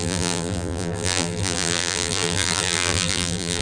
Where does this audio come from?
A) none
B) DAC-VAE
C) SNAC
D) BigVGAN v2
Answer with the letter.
D